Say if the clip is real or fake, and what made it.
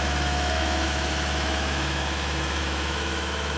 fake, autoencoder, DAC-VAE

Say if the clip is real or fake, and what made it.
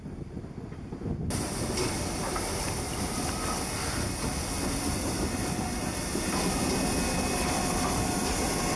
real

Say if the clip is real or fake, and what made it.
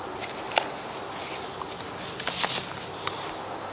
real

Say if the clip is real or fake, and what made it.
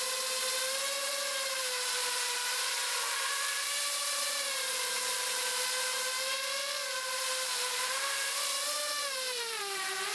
fake, vocoder, BigVGAN v2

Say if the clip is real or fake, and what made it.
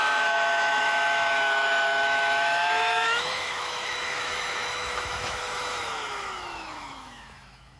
fake, autoencoder, DAC-VAE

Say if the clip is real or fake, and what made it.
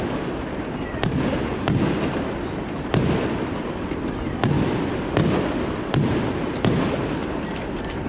real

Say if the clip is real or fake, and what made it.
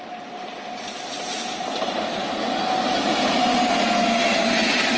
real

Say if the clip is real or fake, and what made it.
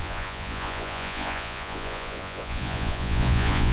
fake, vocoder, Vocos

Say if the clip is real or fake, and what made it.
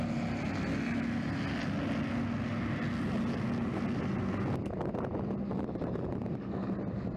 real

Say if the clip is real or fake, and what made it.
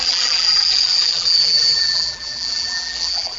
fake, vocoder, BigVGAN v2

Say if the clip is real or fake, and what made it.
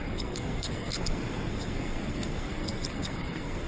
fake, codec, SNAC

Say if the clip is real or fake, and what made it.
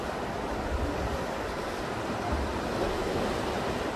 real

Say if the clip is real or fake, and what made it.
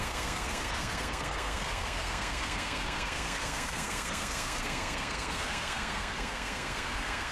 fake, codec, SNAC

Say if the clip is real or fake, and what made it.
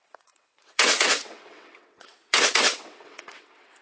fake, vocoder, WaveNeXt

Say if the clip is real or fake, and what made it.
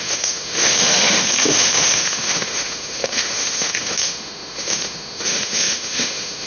fake, autoencoder, DAC-VAE